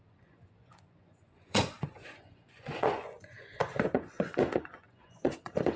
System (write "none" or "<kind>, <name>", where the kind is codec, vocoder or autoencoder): vocoder, Vocos